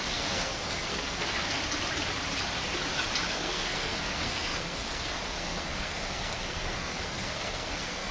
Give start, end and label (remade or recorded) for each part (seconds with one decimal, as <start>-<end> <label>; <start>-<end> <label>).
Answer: 0.0-1.6 remade; 1.6-3.3 recorded; 3.3-8.1 remade